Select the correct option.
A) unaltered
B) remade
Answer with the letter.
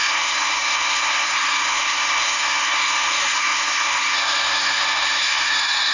B